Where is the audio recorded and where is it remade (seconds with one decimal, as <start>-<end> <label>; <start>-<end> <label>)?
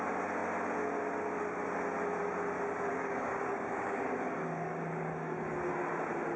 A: 0.0-2.9 recorded; 2.9-5.8 remade; 5.8-6.4 recorded